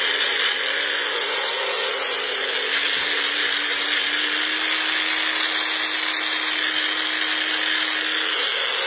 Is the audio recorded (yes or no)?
yes